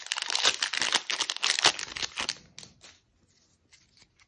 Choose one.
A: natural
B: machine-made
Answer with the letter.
A